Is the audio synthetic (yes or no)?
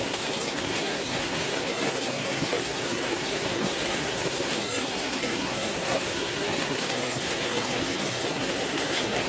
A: yes